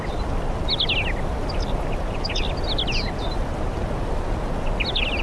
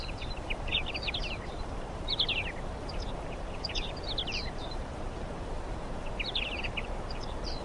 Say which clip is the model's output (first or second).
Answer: second